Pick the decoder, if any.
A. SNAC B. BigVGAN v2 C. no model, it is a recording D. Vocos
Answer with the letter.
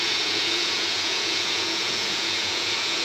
D